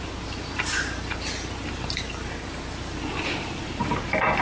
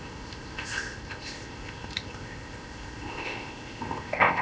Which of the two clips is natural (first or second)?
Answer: first